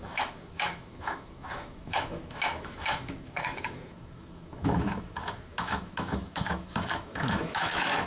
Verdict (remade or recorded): remade